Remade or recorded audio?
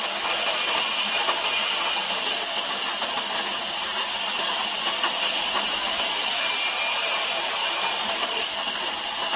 recorded